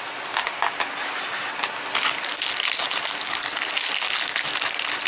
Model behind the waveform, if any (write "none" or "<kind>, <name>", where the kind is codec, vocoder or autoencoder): none